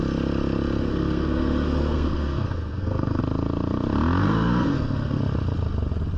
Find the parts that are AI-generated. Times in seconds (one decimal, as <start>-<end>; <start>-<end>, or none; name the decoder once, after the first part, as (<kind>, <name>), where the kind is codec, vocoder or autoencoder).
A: 0.8-3.2 (codec, SNAC); 4.2-5.2